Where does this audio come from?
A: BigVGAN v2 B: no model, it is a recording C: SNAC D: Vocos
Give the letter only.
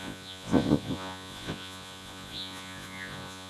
D